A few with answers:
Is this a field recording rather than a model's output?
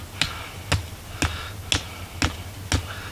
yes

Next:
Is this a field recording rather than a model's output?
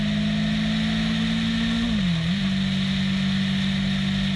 yes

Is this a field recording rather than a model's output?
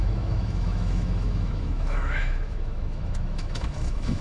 no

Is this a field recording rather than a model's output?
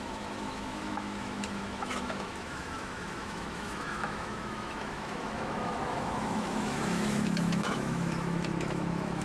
no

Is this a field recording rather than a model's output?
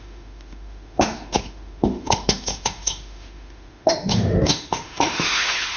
no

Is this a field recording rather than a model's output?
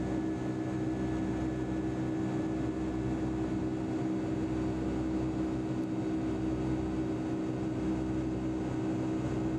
yes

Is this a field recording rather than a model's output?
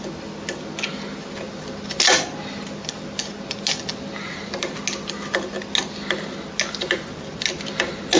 yes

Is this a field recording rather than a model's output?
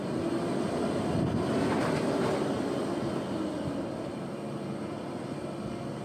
yes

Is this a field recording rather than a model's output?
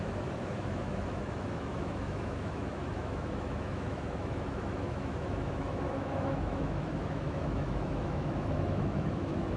no